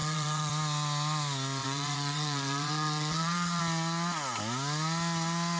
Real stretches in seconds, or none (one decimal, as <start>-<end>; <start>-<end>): 0.5-1.6; 3.6-5.6